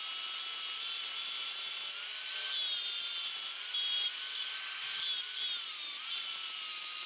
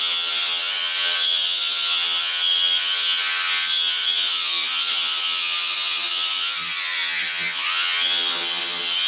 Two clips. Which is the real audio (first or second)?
first